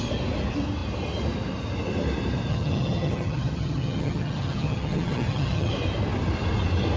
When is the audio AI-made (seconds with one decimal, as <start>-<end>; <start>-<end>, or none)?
2.5-5.7